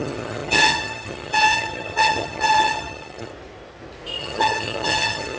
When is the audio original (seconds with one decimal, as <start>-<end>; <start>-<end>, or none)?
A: 3.3-4.2